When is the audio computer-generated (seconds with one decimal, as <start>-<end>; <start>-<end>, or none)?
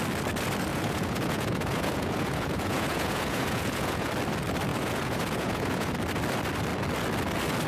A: 0.7-4.1; 4.7-5.9